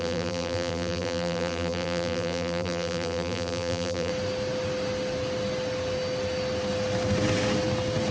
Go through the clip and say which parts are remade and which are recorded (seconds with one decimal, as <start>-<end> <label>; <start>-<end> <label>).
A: 0.0-4.1 remade; 4.1-8.1 recorded

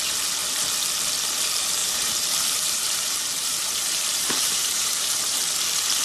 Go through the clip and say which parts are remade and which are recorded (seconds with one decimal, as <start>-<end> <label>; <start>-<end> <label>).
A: 0.0-1.8 recorded; 1.8-5.4 remade; 5.4-6.0 recorded

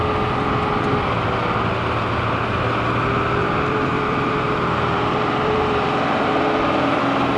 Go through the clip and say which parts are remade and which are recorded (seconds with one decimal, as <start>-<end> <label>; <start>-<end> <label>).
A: 0.0-3.4 recorded; 3.4-7.0 remade; 7.0-7.4 recorded

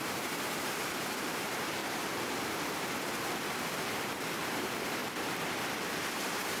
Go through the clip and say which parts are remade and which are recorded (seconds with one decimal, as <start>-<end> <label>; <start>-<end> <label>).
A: 0.0-1.8 remade; 1.8-3.8 recorded; 3.8-5.0 remade; 5.0-6.1 recorded; 6.1-6.6 remade